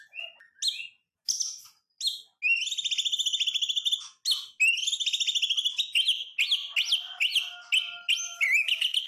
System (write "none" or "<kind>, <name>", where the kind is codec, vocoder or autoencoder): none